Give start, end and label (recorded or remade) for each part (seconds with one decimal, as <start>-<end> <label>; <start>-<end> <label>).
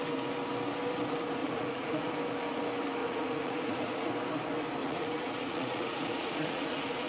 0.0-1.4 recorded; 1.4-2.1 remade; 2.1-3.0 recorded; 3.0-4.1 remade; 4.1-4.8 recorded; 4.8-7.1 remade